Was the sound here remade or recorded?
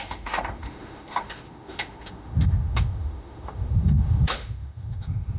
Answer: remade